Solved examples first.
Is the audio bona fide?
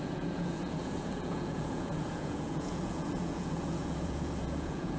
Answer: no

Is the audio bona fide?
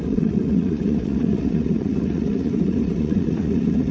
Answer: no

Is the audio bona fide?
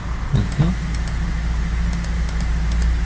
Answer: yes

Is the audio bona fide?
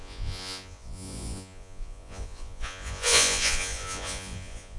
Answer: no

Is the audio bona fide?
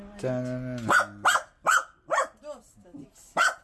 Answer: yes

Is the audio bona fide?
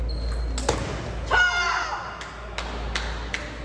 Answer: yes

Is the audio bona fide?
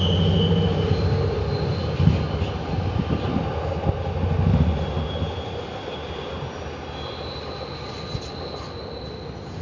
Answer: yes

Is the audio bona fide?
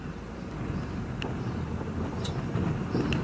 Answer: yes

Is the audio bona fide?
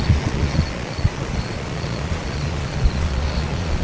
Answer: no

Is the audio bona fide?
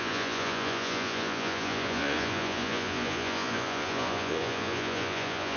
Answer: no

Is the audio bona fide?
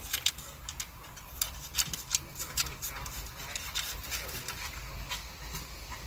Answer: yes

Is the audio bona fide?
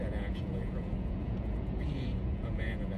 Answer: no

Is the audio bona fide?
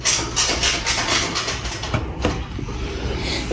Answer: yes